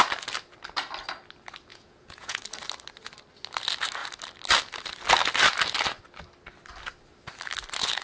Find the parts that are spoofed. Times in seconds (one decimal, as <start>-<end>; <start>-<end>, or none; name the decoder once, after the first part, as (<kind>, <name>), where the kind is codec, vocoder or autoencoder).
1.7-2.4 (vocoder, Vocos)

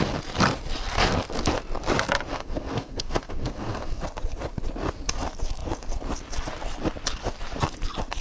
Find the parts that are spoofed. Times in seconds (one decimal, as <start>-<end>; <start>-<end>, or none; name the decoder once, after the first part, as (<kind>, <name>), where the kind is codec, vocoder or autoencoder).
2.3-4.0 (codec, SNAC)